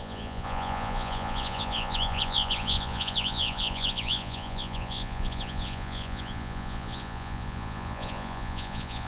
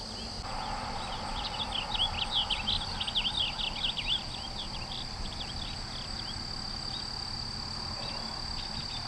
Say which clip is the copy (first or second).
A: first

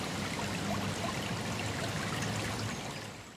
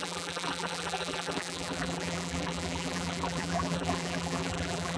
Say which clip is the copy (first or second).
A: second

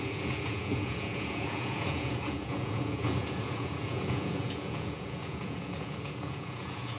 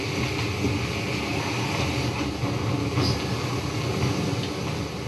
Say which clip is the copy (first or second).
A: first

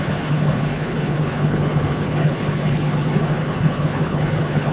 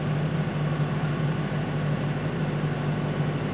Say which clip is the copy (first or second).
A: first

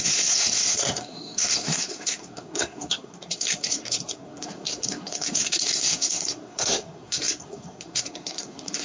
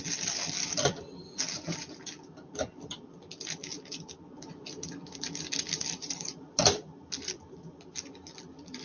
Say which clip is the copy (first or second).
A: first